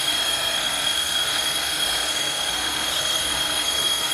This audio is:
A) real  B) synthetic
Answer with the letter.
B